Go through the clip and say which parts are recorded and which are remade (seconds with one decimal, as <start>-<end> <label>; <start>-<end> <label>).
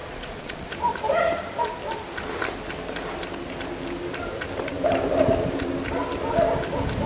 0.0-0.7 remade; 0.7-7.1 recorded